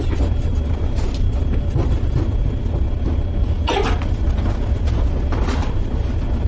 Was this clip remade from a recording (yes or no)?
no